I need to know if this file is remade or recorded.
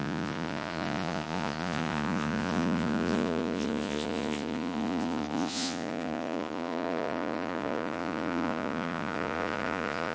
remade